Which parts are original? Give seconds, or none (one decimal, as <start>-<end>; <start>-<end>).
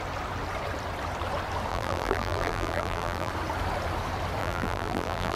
0.0-1.7; 3.3-4.4